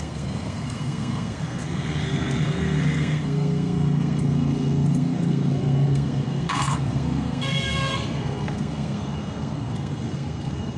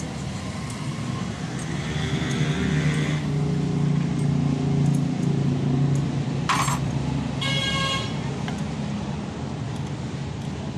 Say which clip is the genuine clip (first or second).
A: second